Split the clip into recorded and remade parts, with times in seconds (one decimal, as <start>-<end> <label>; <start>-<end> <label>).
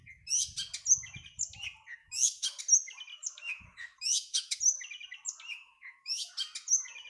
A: 0.0-2.0 recorded; 2.0-2.6 remade; 2.6-3.1 recorded; 3.1-4.6 remade; 4.6-5.5 recorded; 5.5-6.3 remade; 6.3-7.1 recorded